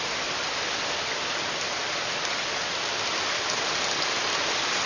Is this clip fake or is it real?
real